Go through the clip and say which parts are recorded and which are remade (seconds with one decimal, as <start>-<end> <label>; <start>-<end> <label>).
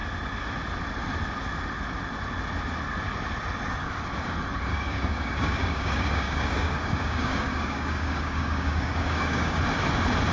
0.0-4.7 recorded; 4.7-9.6 remade; 9.6-10.3 recorded